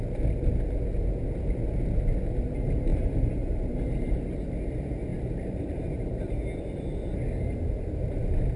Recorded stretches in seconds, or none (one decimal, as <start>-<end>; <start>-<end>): 0.0-2.9; 4.1-5.1; 6.3-8.6